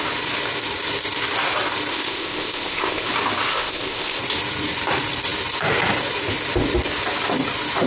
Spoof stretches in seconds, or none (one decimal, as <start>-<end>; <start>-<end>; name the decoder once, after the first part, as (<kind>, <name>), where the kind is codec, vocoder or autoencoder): 1.9-3.1 (codec, ZipCodec); 3.5-4.2